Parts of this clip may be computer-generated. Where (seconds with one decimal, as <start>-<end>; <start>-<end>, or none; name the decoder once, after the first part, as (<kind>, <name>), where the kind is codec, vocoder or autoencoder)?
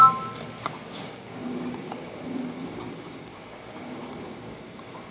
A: 1.0-5.1 (codec, DAC)